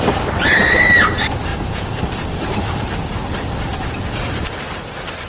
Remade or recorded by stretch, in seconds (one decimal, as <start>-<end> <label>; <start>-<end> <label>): 0.0-1.5 recorded; 1.5-2.0 remade; 2.0-5.3 recorded

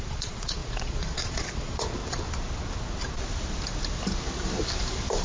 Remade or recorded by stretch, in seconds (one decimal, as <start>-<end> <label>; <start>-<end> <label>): 0.0-2.0 remade; 2.0-5.2 recorded